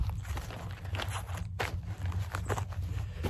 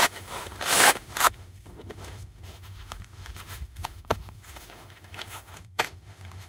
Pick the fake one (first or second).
second